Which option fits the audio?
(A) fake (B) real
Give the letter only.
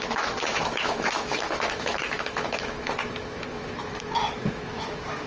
A